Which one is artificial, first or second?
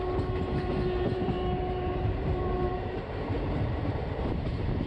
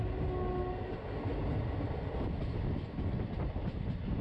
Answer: first